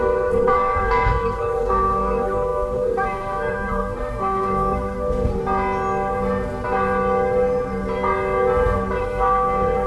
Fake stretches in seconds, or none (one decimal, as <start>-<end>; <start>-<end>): 0.0-5.4; 9.0-9.9